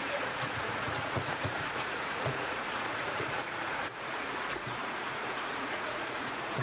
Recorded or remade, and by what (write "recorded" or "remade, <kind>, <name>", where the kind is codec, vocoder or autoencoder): remade, vocoder, Vocos